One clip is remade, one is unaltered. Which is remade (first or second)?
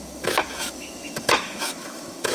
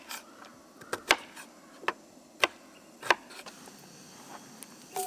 first